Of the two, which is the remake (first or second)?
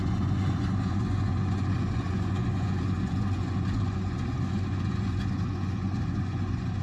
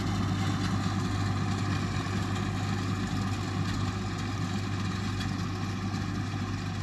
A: first